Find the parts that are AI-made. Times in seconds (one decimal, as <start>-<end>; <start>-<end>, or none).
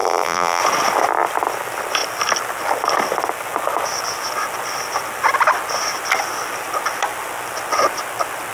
0.0-0.6